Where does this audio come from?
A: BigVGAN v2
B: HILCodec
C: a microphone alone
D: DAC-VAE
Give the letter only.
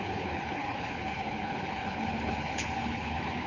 B